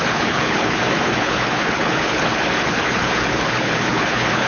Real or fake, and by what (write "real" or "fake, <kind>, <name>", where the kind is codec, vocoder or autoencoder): fake, codec, HILCodec